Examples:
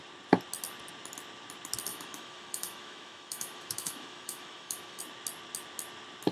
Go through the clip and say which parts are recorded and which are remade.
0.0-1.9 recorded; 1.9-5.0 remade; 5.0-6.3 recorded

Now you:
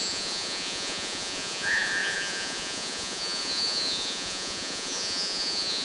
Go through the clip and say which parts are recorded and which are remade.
0.0-5.8 remade